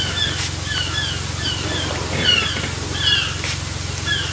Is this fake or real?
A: real